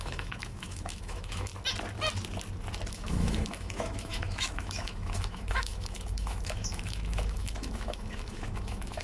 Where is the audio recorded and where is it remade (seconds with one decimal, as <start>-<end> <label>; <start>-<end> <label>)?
0.0-1.5 remade; 1.5-2.9 recorded; 2.9-9.0 remade